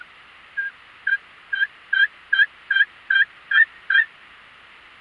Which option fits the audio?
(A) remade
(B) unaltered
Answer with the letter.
B